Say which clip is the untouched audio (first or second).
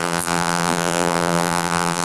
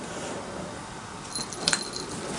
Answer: second